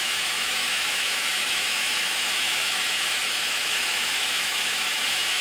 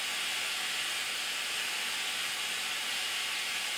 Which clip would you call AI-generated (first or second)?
first